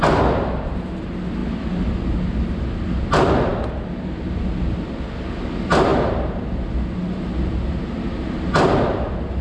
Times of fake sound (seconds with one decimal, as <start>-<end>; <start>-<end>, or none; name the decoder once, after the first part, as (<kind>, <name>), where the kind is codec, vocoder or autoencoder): none